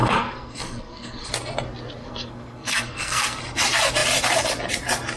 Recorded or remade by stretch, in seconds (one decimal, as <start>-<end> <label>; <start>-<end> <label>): 0.0-1.3 remade; 1.3-2.0 recorded; 2.0-3.4 remade; 3.4-5.2 recorded